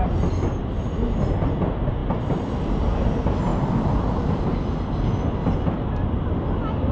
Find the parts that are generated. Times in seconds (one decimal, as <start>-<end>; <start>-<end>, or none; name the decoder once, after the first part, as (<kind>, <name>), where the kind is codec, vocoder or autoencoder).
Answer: none